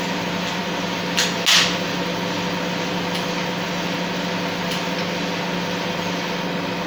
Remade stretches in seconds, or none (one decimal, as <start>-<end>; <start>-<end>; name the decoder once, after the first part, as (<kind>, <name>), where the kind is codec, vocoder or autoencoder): none